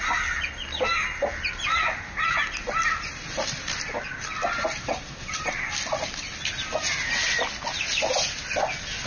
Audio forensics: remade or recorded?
recorded